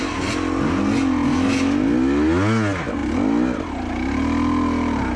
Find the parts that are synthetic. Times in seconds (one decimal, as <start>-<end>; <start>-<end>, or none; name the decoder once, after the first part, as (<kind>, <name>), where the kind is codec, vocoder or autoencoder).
none